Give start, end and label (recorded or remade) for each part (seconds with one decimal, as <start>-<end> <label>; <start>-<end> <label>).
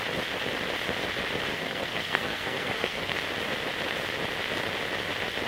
0.0-1.5 recorded; 1.5-3.1 remade; 3.1-5.5 recorded